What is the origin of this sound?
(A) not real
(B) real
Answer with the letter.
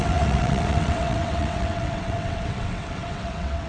A